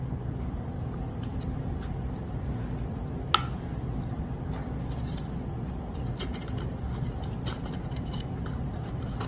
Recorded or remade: recorded